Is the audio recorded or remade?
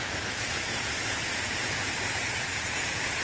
remade